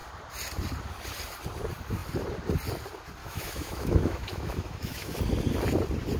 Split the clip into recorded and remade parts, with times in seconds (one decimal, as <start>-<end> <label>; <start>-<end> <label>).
0.0-3.2 recorded; 3.2-5.2 remade; 5.2-6.2 recorded